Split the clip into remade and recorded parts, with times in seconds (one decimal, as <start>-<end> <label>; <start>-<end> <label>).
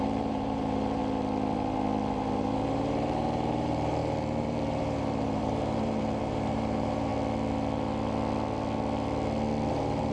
0.0-1.0 remade; 1.0-2.1 recorded; 2.1-7.1 remade; 7.1-9.7 recorded; 9.7-10.1 remade